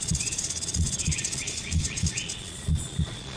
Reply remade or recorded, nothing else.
remade